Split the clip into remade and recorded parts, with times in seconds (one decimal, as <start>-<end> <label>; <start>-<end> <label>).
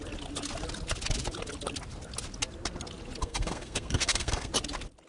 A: 0.0-3.2 recorded; 3.2-4.5 remade; 4.5-5.1 recorded